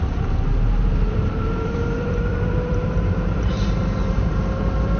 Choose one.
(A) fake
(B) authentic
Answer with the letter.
A